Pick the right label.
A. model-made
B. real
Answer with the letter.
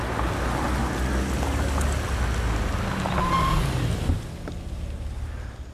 B